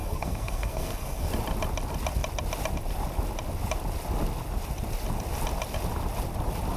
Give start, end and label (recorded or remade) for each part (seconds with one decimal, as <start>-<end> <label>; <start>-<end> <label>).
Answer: 0.0-1.3 remade; 1.3-6.8 recorded